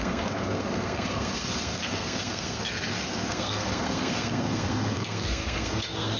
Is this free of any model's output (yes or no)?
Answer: no